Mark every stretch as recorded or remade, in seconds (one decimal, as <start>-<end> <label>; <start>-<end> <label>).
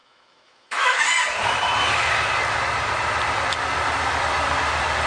0.0-1.0 remade; 1.0-5.1 recorded